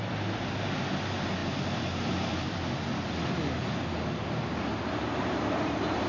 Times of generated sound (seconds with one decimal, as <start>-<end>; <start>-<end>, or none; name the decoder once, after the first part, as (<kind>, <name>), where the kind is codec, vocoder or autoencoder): none

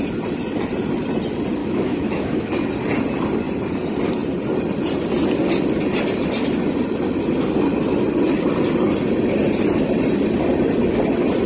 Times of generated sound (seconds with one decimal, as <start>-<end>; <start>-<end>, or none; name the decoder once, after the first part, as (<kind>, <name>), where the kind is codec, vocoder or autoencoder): 1.6-2.5 (autoencoder, DAC-VAE)

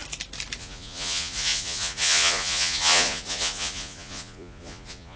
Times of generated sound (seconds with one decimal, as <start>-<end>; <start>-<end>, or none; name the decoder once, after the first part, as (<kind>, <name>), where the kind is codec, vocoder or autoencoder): 0.6-5.2 (vocoder, Vocos)

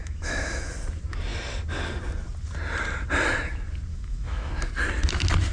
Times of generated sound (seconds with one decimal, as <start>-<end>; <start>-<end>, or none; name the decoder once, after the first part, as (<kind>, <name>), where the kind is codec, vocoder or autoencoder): 0.0-0.7 (autoencoder, DAC-VAE); 3.9-4.5